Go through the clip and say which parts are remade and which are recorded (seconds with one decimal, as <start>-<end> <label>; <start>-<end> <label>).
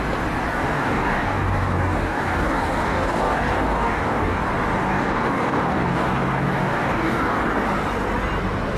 0.0-0.5 recorded; 0.5-4.4 remade; 4.4-4.9 recorded; 4.9-7.4 remade; 7.4-8.8 recorded